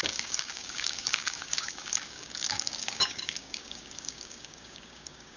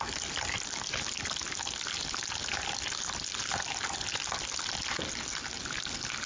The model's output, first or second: first